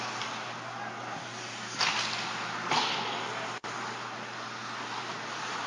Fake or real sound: real